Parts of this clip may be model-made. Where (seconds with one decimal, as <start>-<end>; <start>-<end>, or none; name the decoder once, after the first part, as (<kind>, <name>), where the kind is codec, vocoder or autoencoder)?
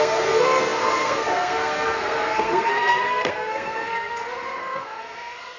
0.0-5.6 (codec, SNAC)